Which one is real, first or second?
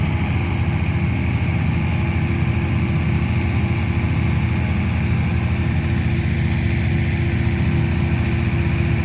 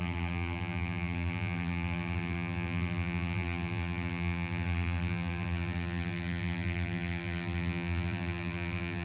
first